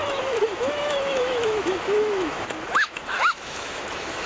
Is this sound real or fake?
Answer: fake